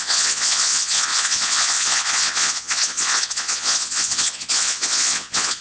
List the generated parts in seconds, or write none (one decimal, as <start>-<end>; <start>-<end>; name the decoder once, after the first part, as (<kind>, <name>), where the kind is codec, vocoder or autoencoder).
0.0-5.6 (vocoder, Vocos)